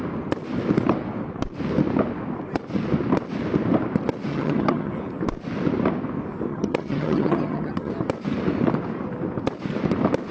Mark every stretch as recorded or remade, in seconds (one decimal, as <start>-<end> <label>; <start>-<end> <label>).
0.0-4.3 recorded; 4.3-4.9 remade; 4.9-6.5 recorded; 6.5-7.9 remade; 7.9-10.3 recorded